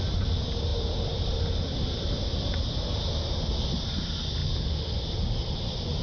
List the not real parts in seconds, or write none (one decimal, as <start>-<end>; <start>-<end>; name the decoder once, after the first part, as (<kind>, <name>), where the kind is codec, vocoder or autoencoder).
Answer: 0.7-2.6 (vocoder, BigVGAN v2)